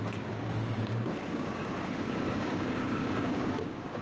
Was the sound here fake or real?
fake